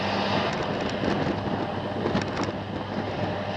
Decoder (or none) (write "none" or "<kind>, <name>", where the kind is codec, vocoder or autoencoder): none